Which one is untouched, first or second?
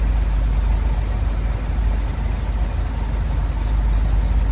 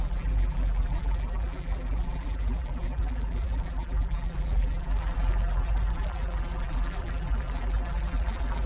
first